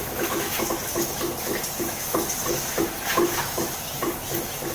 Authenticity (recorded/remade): remade